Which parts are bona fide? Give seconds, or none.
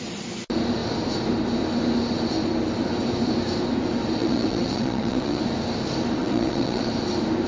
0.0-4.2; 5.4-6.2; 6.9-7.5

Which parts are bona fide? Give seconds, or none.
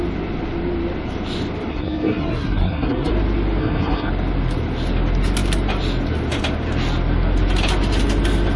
0.0-1.7; 3.1-3.6; 4.1-8.6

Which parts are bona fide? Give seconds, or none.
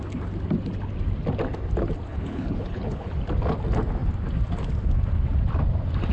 0.0-2.1; 3.1-6.1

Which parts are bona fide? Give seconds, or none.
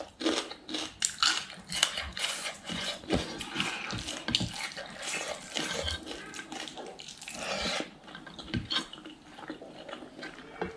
0.0-2.1; 3.8-10.8